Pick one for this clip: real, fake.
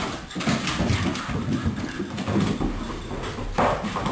real